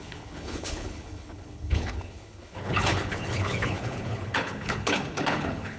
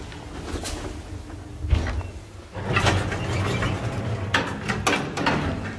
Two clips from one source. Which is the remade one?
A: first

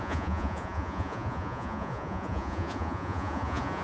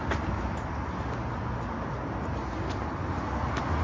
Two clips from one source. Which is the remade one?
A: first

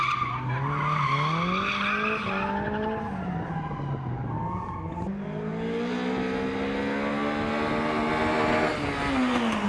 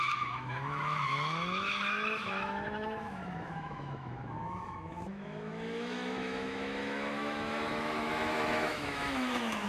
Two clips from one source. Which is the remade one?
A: second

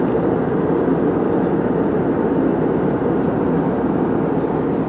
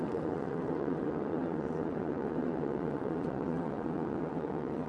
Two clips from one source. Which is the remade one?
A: second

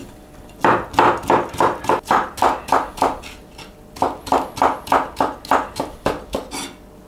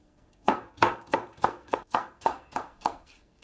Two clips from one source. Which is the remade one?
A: second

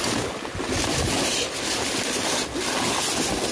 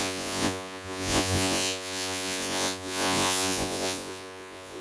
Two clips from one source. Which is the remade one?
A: second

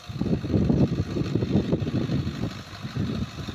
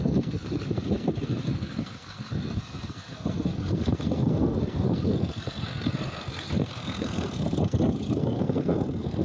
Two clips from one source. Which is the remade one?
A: second